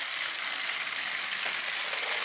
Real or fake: real